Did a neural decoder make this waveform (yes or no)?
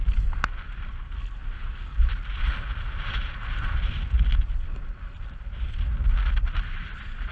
no